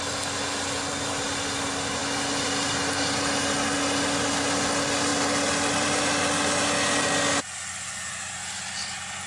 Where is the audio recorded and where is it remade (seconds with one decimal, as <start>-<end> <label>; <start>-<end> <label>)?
0.0-9.3 recorded